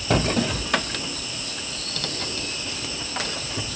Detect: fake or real real